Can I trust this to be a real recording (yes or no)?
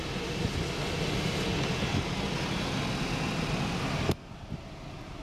yes